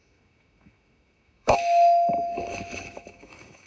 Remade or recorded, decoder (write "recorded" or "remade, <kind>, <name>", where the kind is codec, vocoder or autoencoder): remade, autoencoder, DAC-VAE